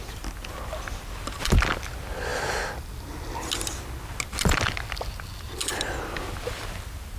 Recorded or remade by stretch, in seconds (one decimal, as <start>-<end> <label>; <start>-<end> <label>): 0.0-7.2 recorded